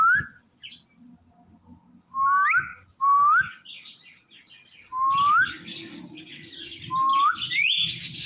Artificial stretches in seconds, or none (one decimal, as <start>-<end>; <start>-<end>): none